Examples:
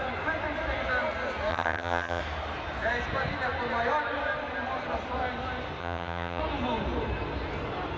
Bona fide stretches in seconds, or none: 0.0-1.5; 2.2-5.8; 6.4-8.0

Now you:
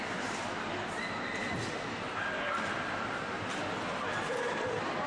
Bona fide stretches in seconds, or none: 0.0-5.1